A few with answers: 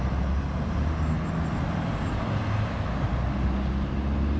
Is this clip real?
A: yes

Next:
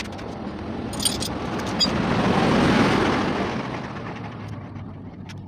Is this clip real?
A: yes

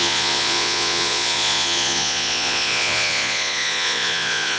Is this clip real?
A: no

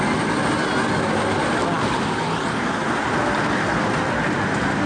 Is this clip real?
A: yes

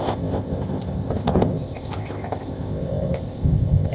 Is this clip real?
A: no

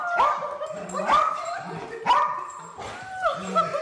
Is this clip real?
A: yes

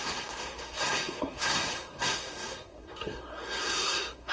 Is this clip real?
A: no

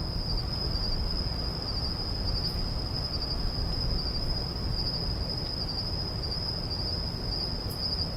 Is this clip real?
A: yes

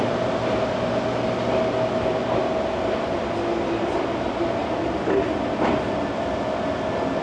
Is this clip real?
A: yes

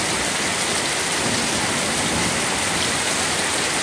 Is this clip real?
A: yes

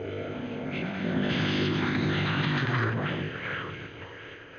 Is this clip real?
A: no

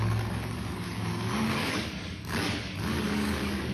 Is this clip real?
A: no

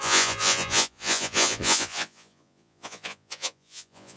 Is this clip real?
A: no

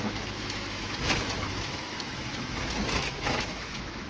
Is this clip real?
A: no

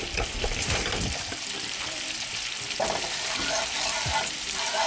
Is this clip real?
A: no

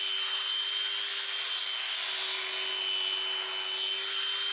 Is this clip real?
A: yes